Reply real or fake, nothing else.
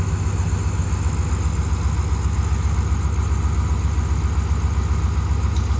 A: real